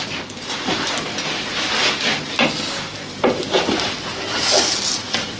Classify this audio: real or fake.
real